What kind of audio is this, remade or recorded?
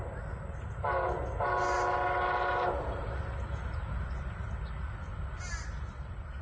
recorded